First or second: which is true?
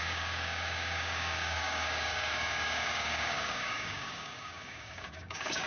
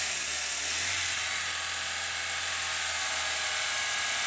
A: second